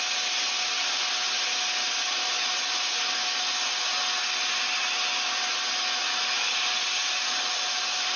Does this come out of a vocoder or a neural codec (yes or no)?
no